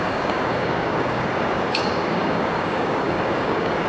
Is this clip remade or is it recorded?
remade